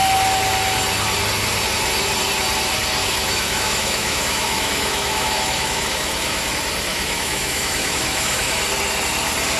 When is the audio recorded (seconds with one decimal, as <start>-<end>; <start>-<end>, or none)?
0.0-3.0; 6.5-6.9; 8.6-9.6